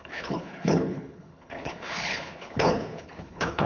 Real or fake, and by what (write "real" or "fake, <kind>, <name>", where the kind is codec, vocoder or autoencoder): fake, codec, HILCodec